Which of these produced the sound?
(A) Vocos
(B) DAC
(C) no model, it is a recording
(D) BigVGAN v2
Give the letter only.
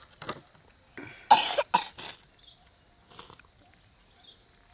C